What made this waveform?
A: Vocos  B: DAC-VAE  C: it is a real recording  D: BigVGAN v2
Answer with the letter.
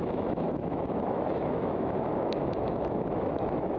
B